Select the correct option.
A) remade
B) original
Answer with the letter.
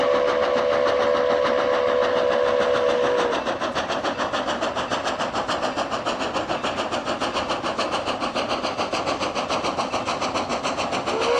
B